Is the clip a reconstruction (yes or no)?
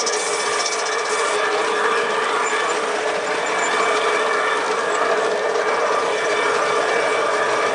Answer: no